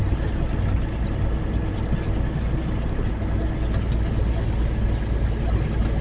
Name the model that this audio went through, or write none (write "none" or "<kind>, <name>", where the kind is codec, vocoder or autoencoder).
none